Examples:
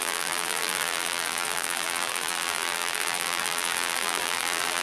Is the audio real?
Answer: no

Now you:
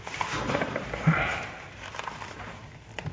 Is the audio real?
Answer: no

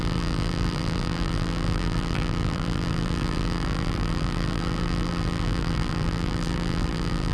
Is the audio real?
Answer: no